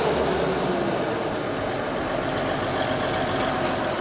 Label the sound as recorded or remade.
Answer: recorded